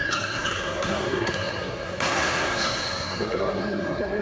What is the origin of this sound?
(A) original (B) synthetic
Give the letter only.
B